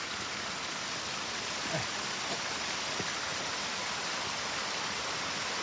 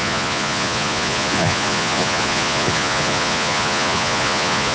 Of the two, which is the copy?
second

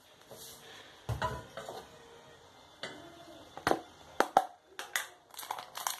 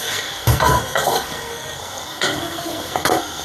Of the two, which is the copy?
second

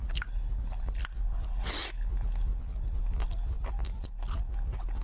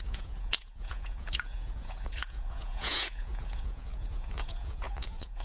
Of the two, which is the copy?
second